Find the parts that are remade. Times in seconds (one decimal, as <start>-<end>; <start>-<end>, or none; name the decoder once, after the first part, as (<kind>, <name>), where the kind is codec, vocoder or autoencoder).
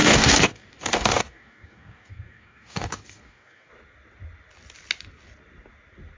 0.0-3.7 (codec, DAC)